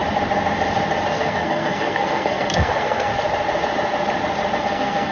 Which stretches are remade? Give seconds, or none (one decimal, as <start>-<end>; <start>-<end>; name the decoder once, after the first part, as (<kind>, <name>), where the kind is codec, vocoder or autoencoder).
1.1-3.1 (codec, SNAC); 4.6-5.1